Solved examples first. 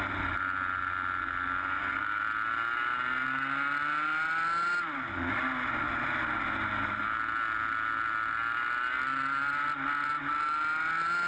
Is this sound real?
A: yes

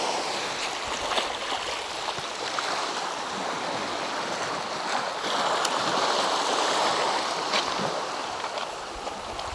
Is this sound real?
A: yes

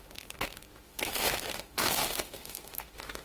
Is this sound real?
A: no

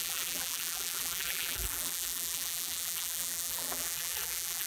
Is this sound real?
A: no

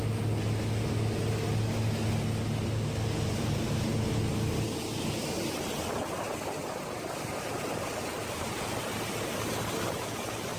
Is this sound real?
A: yes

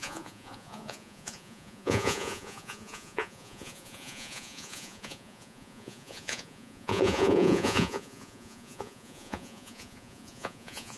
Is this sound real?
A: no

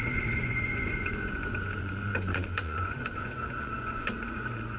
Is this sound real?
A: no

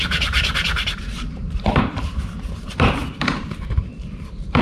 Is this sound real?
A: no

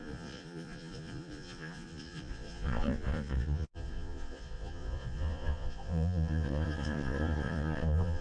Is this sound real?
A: no